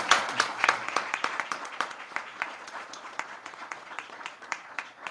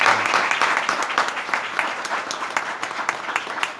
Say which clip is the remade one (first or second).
first